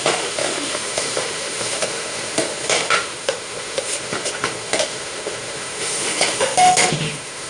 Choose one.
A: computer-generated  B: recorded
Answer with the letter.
A